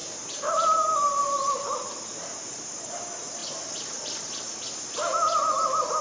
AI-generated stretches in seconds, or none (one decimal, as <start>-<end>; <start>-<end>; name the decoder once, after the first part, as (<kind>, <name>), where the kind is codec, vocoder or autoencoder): 3.4-4.4 (vocoder, BigVGAN v2)